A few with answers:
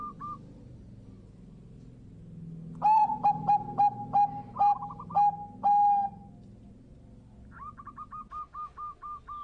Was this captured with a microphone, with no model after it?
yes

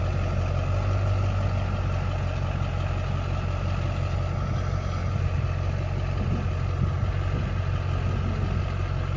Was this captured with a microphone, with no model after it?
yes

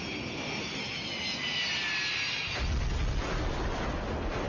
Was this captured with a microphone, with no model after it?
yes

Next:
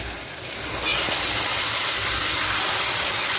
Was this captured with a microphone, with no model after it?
yes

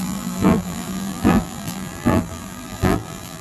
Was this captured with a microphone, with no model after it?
no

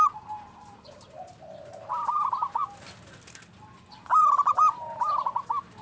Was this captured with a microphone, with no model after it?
yes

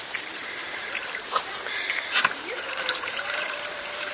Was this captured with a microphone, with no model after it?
no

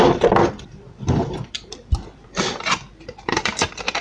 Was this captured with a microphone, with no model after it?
no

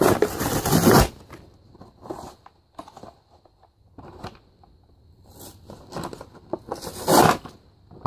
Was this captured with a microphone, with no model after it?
yes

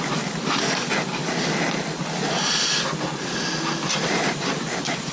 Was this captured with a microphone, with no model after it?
yes